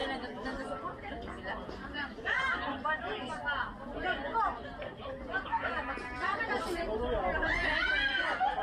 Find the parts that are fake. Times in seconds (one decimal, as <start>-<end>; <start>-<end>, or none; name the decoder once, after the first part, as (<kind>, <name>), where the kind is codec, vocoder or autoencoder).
none